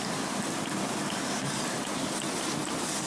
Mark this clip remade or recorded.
recorded